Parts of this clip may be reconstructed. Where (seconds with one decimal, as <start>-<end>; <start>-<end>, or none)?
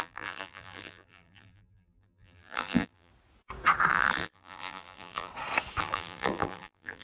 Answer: 0.0-3.1; 3.9-5.3; 5.8-7.0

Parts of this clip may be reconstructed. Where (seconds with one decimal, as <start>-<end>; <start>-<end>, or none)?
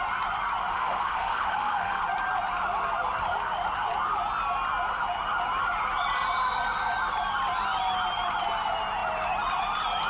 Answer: 0.6-2.0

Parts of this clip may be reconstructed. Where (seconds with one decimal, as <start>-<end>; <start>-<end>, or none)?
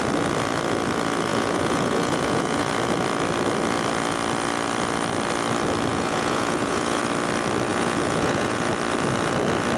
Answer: 1.3-2.7; 5.9-7.0; 7.7-8.7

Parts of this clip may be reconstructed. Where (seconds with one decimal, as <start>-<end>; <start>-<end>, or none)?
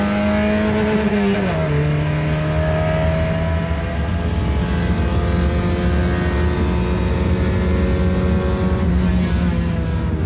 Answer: none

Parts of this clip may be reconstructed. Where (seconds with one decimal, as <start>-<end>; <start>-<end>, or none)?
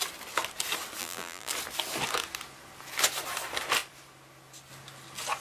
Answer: 1.0-1.5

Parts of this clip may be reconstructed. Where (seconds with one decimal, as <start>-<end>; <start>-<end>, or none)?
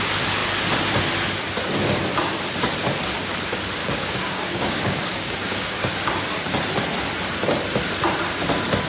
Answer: 3.8-5.9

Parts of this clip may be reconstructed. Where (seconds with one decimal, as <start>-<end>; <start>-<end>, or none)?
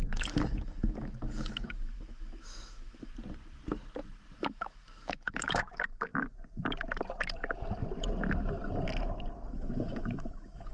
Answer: 0.0-3.1; 4.4-6.1; 9.5-10.7